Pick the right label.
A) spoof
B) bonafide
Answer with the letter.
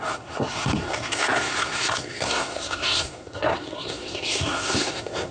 A